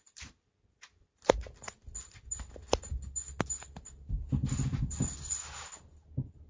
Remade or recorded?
recorded